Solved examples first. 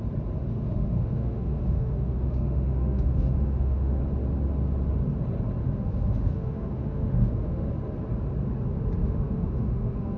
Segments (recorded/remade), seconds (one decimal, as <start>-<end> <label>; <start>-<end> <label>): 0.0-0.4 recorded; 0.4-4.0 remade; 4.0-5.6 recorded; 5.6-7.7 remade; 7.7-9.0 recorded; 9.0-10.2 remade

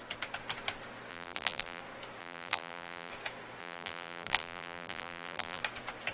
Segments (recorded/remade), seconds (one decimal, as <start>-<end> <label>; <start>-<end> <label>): 0.0-1.1 recorded; 1.1-1.8 remade; 1.8-2.2 recorded; 2.2-3.1 remade; 3.1-3.6 recorded; 3.6-5.6 remade; 5.6-6.1 recorded

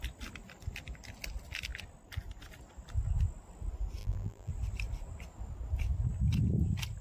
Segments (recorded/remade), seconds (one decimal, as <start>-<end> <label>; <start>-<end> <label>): 0.0-4.0 recorded; 4.0-4.5 remade; 4.5-7.0 recorded

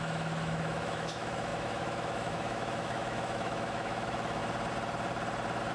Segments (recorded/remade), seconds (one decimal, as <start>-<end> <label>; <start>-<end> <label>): 0.0-4.4 remade; 4.4-5.7 recorded

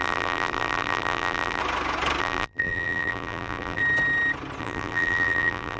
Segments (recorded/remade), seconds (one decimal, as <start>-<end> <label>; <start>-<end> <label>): 0.0-1.6 remade; 1.6-2.2 recorded; 2.2-3.8 remade; 3.8-4.6 recorded; 4.6-5.8 remade

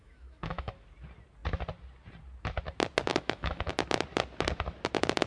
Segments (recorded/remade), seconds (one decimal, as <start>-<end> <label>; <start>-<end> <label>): 0.0-0.7 remade; 0.7-3.1 recorded; 3.1-3.7 remade; 3.7-5.3 recorded